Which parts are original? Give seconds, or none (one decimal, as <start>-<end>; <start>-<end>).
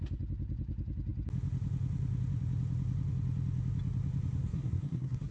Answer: 0.0-4.4